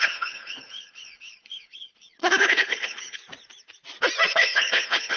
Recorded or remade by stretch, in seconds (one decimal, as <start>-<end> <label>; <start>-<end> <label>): 0.0-3.2 remade; 3.2-4.3 recorded; 4.3-5.2 remade